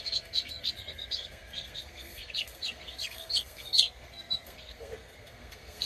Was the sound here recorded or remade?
remade